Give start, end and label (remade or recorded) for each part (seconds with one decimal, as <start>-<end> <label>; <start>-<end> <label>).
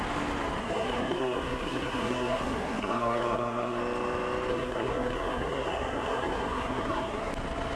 0.0-0.6 recorded; 0.6-3.8 remade; 3.8-4.5 recorded; 4.5-7.3 remade; 7.3-7.8 recorded